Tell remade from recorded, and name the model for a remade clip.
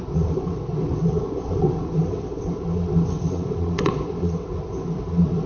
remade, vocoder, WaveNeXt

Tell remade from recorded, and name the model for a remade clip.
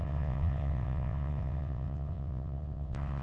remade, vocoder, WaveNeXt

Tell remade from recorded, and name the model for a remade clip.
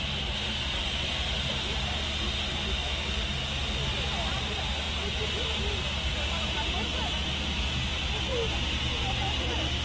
recorded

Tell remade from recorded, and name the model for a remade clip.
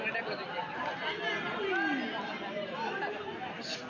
recorded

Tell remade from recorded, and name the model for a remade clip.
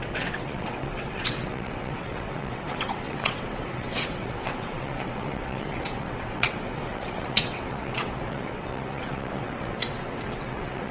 remade, vocoder, WaveNeXt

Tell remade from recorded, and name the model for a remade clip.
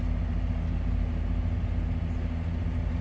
recorded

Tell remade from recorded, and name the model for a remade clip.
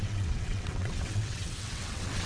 remade, vocoder, WaveNeXt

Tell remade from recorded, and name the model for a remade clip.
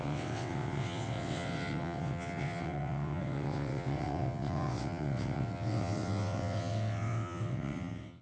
remade, vocoder, WaveNeXt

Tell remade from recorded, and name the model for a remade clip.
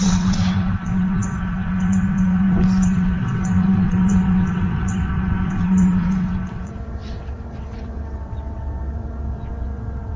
remade, vocoder, WaveNeXt